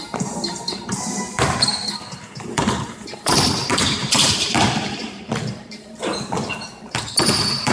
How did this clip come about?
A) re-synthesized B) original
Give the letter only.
A